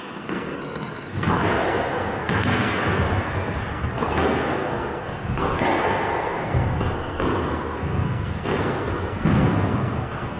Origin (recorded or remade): remade